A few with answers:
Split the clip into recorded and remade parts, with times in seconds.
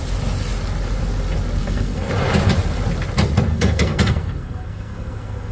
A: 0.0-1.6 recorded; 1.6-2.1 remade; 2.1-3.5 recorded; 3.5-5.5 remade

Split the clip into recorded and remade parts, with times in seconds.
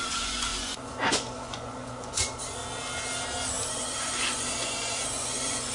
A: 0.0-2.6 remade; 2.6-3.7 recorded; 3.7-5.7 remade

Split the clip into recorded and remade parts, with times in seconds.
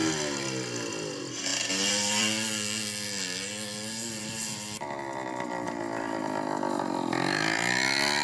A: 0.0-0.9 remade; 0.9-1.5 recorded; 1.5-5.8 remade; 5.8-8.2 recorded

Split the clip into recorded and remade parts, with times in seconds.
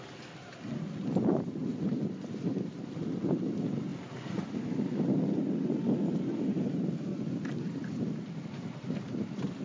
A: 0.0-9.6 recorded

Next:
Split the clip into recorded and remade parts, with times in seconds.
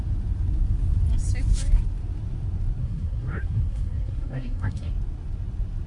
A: 0.0-2.8 recorded; 2.8-4.9 remade; 4.9-5.9 recorded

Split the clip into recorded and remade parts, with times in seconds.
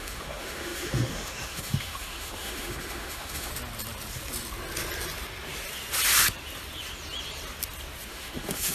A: 0.0-3.5 remade; 3.5-8.1 recorded; 8.1-8.7 remade